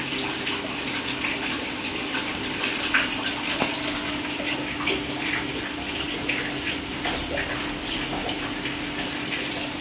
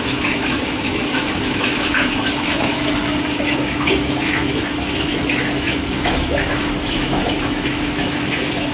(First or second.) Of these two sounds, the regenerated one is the second